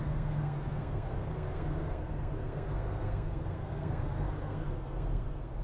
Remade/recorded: remade